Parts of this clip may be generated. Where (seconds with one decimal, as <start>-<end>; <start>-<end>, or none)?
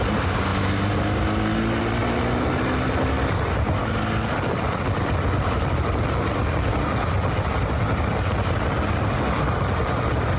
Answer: none